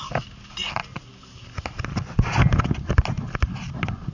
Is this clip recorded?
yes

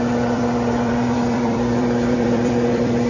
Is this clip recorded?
no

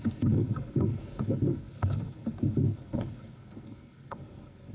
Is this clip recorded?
no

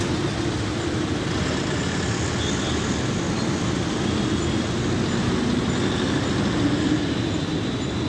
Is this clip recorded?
yes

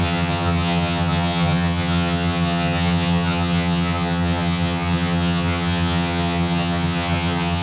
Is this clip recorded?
no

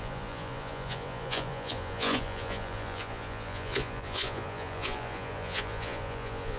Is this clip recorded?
no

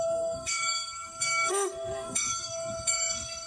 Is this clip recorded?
no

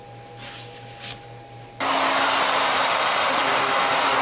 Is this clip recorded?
yes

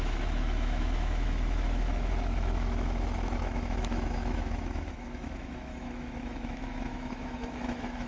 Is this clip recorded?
no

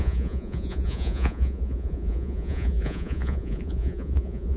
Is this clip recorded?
no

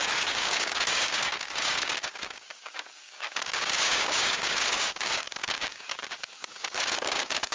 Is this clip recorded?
no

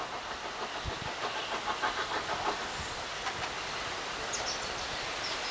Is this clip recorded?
yes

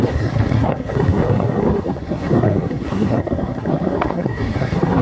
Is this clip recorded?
no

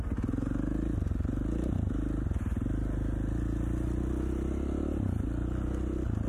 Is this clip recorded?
yes